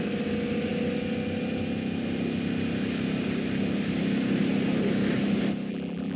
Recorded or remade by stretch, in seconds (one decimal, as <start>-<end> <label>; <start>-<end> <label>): 0.0-5.7 recorded; 5.7-6.2 remade